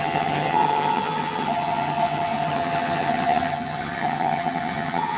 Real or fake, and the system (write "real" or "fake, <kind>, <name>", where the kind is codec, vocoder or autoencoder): fake, vocoder, HiFi-GAN